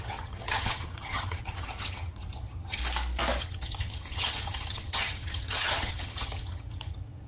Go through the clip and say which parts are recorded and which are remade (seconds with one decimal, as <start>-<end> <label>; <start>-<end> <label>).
0.0-2.8 remade; 2.8-3.4 recorded; 3.4-7.3 remade

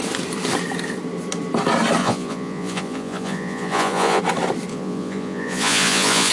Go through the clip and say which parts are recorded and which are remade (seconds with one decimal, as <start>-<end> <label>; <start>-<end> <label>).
0.0-2.0 recorded; 2.0-4.2 remade; 4.2-4.7 recorded; 4.7-6.3 remade

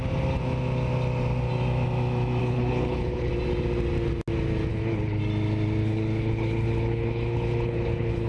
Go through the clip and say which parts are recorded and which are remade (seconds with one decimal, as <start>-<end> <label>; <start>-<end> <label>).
0.0-2.4 recorded; 2.4-3.3 remade; 3.3-4.7 recorded; 4.7-5.2 remade; 5.2-5.8 recorded; 5.8-8.3 remade

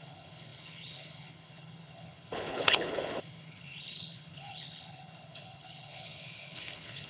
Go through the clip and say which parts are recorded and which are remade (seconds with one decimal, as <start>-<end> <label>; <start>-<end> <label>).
0.0-7.1 remade